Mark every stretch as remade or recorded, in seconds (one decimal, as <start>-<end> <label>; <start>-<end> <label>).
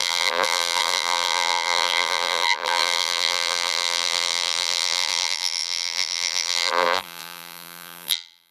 0.0-8.5 remade